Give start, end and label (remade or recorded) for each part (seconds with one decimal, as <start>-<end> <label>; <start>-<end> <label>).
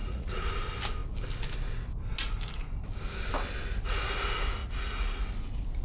0.0-0.5 remade; 0.5-4.6 recorded; 4.6-5.2 remade; 5.2-5.8 recorded